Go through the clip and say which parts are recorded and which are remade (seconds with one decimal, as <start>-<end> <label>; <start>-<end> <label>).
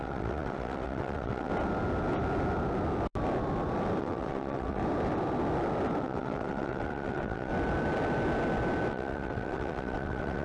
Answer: 0.0-1.5 remade; 1.5-4.0 recorded; 4.0-4.8 remade; 4.8-6.0 recorded; 6.0-7.5 remade; 7.5-8.9 recorded; 8.9-10.4 remade